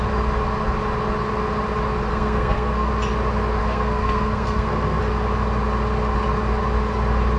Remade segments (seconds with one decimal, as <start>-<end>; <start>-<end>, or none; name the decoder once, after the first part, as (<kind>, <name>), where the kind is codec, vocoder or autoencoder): 2.1-2.9 (codec, SNAC); 3.6-5.0